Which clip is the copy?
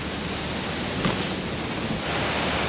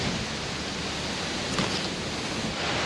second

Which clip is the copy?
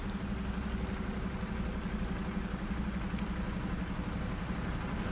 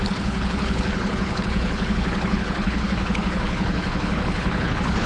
second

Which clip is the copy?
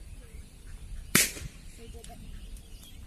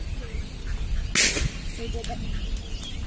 first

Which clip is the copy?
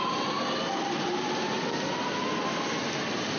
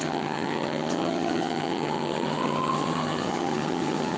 second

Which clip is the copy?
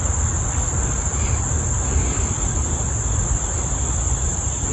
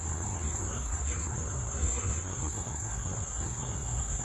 second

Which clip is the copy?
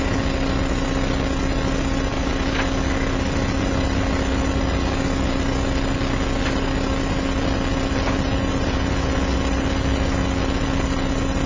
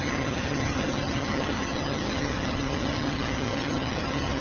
second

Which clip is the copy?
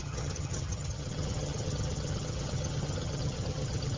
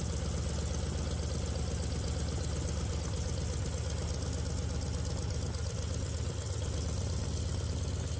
first